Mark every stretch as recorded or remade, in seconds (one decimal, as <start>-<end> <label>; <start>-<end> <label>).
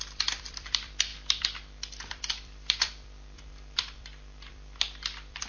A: 0.0-5.5 remade